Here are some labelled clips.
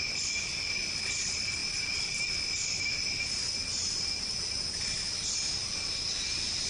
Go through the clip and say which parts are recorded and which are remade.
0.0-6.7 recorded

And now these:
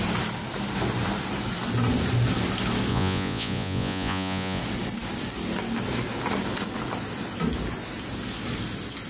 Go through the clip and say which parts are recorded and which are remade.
0.0-2.9 recorded; 2.9-4.6 remade; 4.6-9.1 recorded